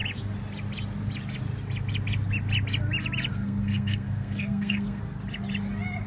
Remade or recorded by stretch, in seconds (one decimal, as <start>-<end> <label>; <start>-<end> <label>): 0.0-3.3 recorded; 3.3-5.0 remade; 5.0-6.1 recorded

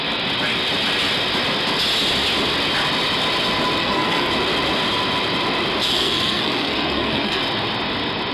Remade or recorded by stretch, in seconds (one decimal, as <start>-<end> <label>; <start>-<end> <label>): 0.0-3.8 recorded; 3.8-4.3 remade; 4.3-5.8 recorded; 5.8-7.4 remade; 7.4-8.3 recorded

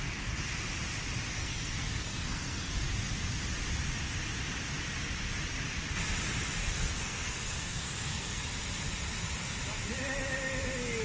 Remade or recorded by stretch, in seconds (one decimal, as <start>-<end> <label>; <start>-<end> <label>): 0.0-1.4 recorded; 1.4-2.7 remade; 2.7-6.6 recorded; 6.6-8.4 remade; 8.4-11.0 recorded

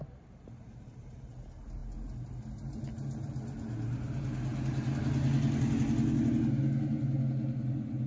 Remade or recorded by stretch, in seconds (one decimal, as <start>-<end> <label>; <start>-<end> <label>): 0.0-8.1 recorded